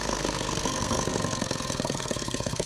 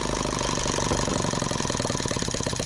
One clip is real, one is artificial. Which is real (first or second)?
second